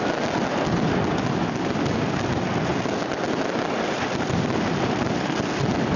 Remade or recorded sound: recorded